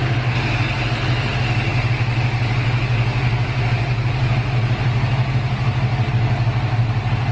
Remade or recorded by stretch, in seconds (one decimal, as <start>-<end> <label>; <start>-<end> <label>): 0.0-7.3 recorded